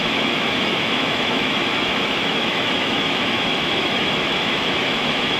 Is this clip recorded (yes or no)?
no